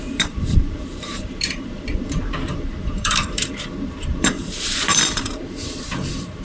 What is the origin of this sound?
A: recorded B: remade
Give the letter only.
B